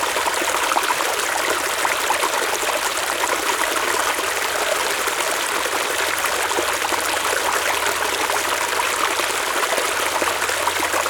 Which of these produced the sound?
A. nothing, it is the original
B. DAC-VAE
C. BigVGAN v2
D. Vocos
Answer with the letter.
A